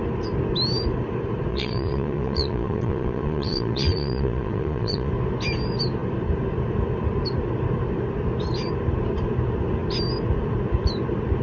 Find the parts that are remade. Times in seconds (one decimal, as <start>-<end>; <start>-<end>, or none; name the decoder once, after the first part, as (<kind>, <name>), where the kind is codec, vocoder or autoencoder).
1.5-5.1 (vocoder, Vocos)

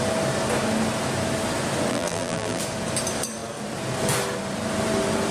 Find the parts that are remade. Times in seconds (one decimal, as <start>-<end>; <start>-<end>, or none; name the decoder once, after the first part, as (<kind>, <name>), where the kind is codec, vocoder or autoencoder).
1.9-2.6 (vocoder, BigVGAN v2)